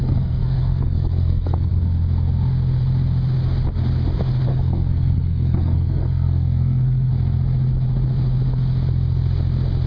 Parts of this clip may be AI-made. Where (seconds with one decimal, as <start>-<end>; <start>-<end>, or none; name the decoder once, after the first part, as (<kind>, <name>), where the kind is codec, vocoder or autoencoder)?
0.0-1.7 (codec, SNAC); 4.5-7.1